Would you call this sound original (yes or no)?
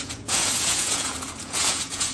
no